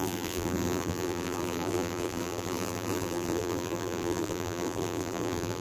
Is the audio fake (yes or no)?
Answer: yes